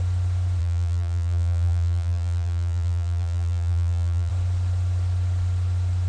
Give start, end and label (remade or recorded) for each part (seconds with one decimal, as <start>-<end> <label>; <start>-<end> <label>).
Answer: 0.0-0.6 recorded; 0.6-4.3 remade; 4.3-6.1 recorded